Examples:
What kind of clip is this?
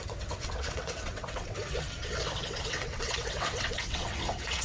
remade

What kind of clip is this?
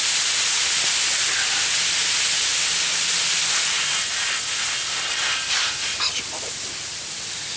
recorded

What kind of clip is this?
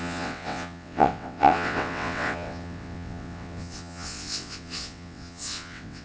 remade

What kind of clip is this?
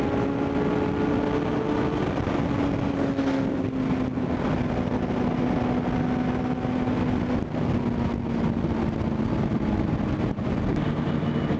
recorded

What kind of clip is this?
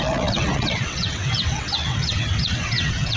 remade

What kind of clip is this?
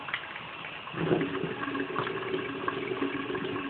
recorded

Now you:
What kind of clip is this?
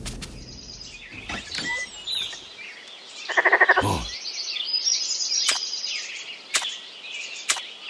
recorded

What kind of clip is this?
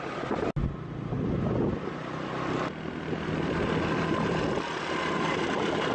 recorded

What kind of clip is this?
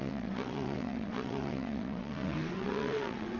remade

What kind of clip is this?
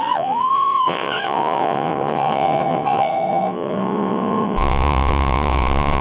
remade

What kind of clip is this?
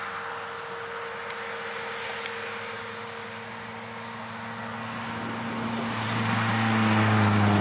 recorded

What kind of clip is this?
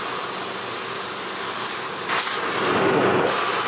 recorded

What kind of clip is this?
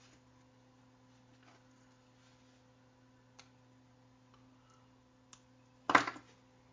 recorded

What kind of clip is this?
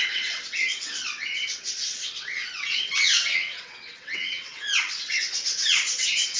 remade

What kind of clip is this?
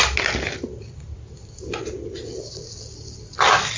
recorded